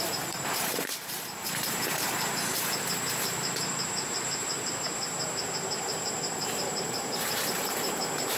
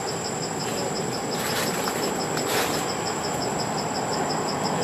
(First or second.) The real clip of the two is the second